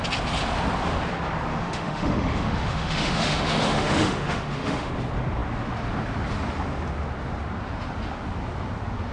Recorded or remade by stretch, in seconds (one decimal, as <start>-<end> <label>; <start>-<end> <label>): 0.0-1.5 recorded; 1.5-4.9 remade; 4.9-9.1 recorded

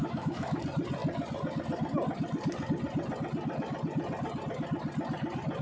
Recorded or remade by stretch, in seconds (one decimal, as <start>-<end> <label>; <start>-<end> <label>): 0.0-0.6 remade; 0.6-5.6 recorded

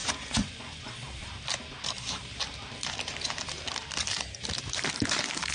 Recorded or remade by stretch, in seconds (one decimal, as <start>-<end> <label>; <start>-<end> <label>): 0.0-0.9 remade; 0.9-5.5 recorded

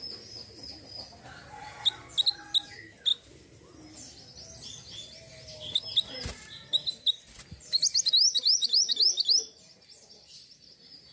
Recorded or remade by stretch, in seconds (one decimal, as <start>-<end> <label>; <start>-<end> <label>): 0.0-11.1 recorded